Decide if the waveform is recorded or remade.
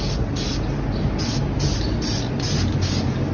recorded